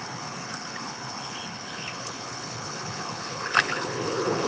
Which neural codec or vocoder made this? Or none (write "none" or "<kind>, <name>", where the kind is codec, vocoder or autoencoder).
codec, HILCodec